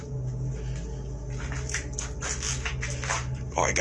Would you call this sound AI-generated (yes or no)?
no